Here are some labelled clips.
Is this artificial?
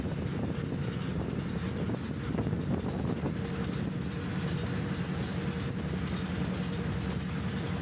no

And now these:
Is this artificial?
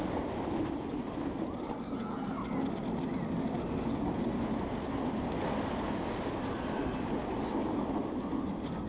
no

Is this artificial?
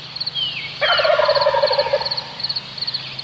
no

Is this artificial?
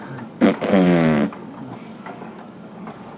yes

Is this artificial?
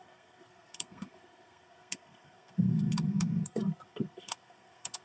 yes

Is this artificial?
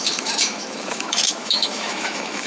yes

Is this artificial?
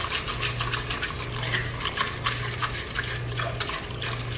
no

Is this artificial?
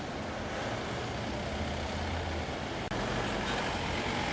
no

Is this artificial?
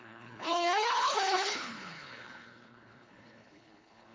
yes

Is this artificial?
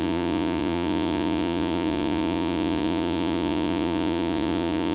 yes